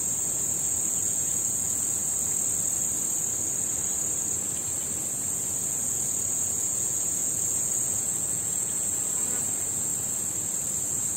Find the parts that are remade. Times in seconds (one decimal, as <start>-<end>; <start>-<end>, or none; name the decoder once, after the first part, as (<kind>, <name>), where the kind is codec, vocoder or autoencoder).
0.0-2.0 (vocoder, Vocos); 5.7-9.9; 10.7-11.2